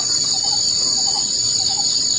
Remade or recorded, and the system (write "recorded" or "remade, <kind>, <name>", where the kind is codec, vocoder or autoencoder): recorded